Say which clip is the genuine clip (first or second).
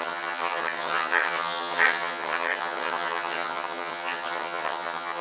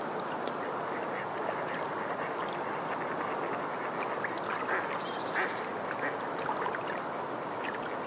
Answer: second